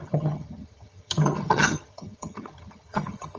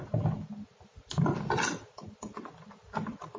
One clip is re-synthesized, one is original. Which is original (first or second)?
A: second